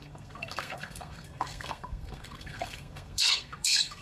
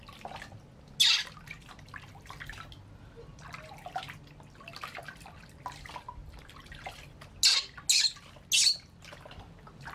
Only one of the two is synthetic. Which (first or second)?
first